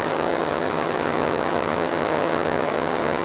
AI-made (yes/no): yes